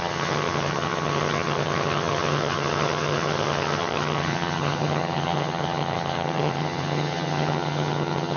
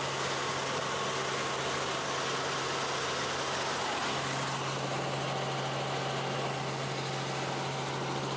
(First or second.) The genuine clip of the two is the second